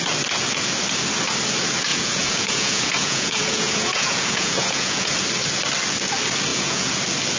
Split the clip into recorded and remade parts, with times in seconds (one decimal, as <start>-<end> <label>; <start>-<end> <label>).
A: 0.0-1.9 recorded; 1.9-5.1 remade; 5.1-6.5 recorded; 6.5-7.0 remade; 7.0-7.4 recorded